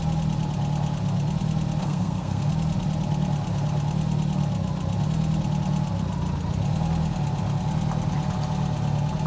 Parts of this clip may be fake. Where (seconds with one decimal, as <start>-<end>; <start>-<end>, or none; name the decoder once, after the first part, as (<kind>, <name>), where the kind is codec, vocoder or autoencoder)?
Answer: 1.8-2.5 (codec, SNAC)